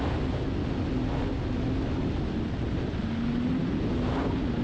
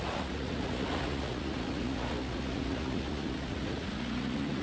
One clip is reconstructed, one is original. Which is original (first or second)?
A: first